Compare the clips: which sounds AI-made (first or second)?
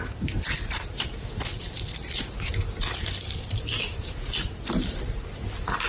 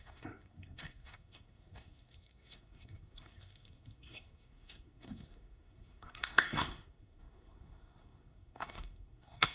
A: second